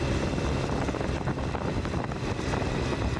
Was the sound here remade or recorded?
remade